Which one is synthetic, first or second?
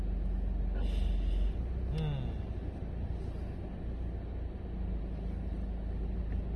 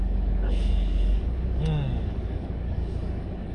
second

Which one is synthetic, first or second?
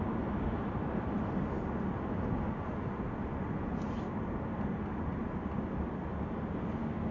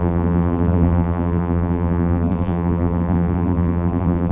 second